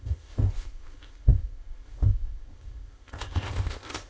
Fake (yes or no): yes